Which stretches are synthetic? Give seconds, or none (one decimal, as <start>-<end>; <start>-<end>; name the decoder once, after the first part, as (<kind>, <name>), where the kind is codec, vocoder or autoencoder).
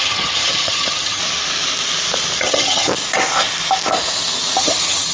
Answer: 0.0-1.2 (vocoder, HiFi-GAN); 2.4-2.9; 4.6-5.1